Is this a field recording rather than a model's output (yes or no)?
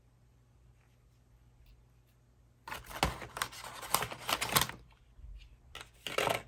yes